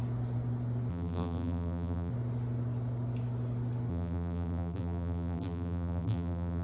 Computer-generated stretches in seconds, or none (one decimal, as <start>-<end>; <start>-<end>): 0.9-2.1; 3.9-6.6